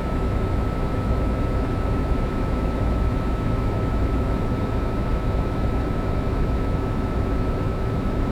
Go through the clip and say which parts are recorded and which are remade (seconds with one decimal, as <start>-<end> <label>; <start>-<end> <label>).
0.0-8.3 remade